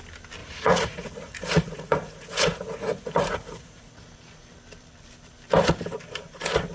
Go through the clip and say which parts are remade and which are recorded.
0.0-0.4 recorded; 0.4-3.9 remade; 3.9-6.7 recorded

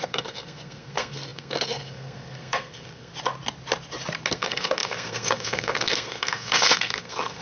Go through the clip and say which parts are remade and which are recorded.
0.0-3.1 remade; 3.1-4.3 recorded; 4.3-7.4 remade